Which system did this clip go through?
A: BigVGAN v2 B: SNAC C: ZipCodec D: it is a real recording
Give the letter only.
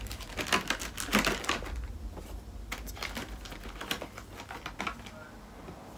D